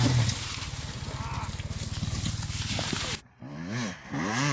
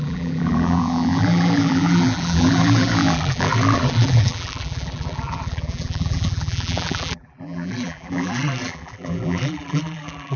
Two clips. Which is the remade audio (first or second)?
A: second